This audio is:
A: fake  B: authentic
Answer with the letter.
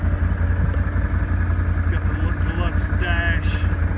B